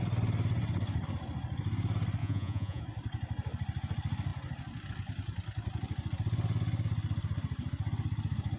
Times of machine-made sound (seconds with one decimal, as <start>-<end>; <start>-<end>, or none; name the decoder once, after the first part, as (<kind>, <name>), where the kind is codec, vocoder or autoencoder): 2.2-2.8 (vocoder, Vocos)